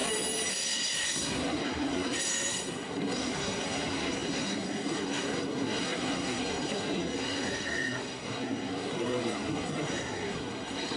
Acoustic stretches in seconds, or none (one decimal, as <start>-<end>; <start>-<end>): 0.0-0.5